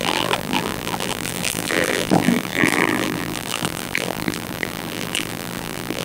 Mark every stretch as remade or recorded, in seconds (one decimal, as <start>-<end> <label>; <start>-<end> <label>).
0.0-6.0 remade